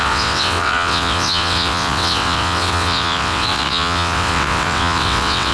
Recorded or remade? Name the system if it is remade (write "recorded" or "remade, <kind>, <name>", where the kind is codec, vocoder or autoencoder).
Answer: remade, vocoder, WaveNeXt